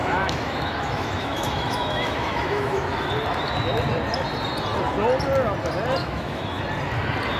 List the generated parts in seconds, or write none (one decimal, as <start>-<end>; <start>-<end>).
0.0-3.1; 6.0-6.6

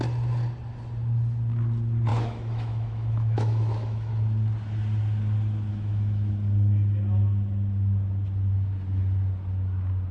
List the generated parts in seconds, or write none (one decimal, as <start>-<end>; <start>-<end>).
2.1-4.1; 5.7-6.3